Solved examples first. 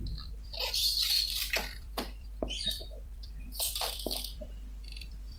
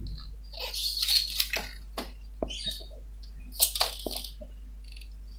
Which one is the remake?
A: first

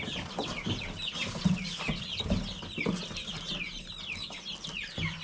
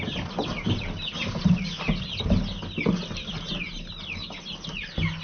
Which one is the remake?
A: first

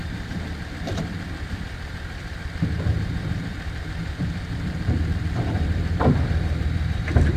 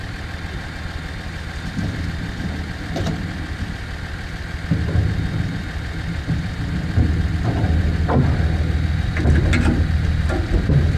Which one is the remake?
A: first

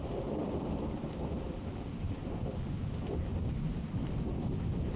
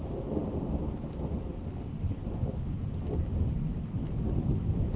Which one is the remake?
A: first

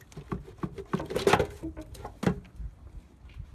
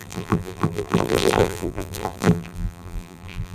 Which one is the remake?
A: second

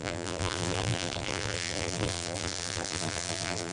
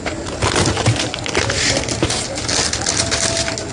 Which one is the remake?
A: first